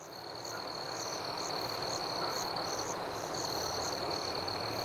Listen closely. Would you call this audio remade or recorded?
recorded